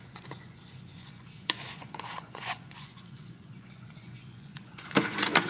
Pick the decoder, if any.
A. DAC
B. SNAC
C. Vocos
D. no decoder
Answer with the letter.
C